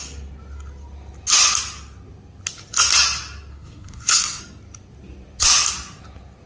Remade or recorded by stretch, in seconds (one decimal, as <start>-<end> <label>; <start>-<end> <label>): 0.0-3.5 recorded; 3.5-4.4 remade; 4.4-6.5 recorded